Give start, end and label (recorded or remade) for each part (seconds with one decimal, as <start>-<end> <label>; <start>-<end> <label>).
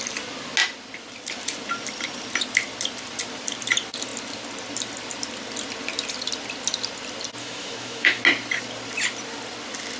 0.0-7.4 recorded; 7.4-8.2 remade; 8.2-10.0 recorded